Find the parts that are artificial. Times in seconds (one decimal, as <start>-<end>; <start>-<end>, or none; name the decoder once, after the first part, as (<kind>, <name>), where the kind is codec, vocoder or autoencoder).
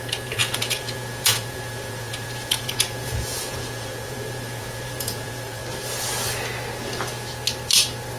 0.0-5.6 (vocoder, Vocos)